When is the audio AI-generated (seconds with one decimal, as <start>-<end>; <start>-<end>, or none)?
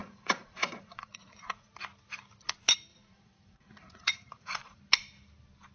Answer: 0.0-1.7; 2.9-4.8